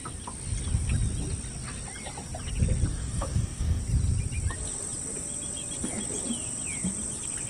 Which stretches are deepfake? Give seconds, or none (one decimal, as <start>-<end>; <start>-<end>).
2.9-3.8